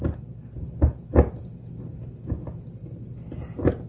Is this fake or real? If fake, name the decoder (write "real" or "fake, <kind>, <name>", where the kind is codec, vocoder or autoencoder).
real